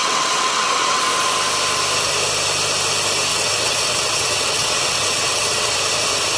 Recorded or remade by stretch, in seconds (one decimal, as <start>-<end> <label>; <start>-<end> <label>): 0.0-1.0 remade; 1.0-3.3 recorded; 3.3-5.7 remade; 5.7-6.4 recorded